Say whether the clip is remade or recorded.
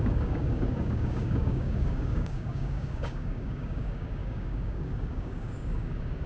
remade